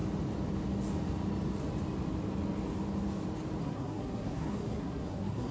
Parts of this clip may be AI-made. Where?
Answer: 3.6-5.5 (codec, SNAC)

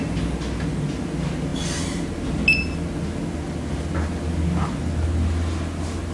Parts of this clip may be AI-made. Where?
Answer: none

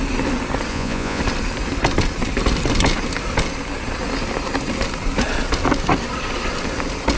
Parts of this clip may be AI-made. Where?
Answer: 0.7-1.2 (vocoder, Vocos)

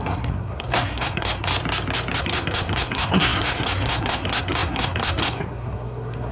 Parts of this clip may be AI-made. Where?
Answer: 0.0-1.5 (codec, SNAC); 2.2-6.3

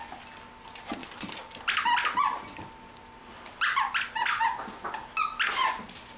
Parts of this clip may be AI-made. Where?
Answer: none